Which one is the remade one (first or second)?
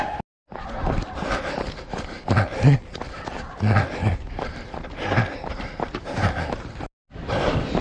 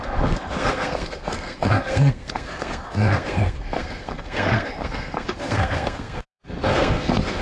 second